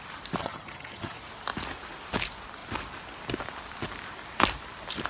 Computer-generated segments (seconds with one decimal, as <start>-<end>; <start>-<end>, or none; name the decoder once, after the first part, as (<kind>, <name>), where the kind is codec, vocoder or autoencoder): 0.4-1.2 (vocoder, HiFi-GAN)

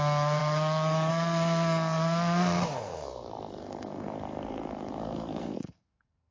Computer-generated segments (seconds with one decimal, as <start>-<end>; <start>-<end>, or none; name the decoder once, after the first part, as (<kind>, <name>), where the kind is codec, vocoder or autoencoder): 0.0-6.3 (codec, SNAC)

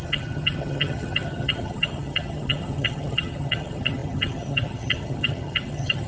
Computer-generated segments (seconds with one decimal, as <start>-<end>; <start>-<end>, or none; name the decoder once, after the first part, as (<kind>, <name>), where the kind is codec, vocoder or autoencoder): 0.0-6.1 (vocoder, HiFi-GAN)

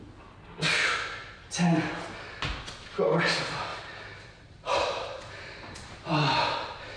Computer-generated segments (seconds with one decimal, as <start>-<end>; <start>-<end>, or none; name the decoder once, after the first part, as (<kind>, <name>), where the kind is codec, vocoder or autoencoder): 3.7-5.3 (vocoder, BigVGAN v2)

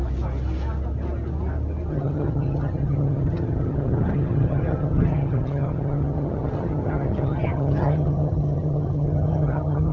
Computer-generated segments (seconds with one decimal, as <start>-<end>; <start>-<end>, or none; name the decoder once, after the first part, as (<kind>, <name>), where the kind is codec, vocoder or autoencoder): 1.9-9.9 (vocoder, HiFi-GAN)

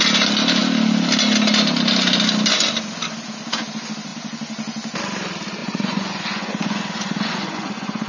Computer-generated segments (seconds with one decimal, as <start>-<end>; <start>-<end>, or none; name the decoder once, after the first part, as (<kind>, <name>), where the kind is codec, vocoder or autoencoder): 5.6-8.1 (vocoder, Vocos)